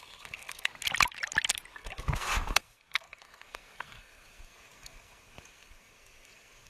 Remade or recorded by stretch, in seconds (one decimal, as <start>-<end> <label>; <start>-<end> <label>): 0.0-0.7 remade; 0.7-1.7 recorded; 1.7-6.7 remade